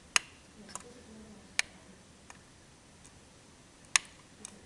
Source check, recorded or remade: recorded